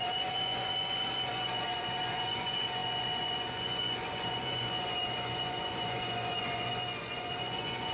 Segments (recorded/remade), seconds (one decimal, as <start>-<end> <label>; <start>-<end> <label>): 0.0-7.9 remade